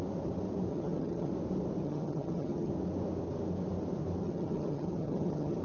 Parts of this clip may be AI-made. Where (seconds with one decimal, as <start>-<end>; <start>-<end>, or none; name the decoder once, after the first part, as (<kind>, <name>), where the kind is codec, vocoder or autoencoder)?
0.7-1.3 (vocoder, HiFi-GAN); 1.8-2.7; 4.2-5.6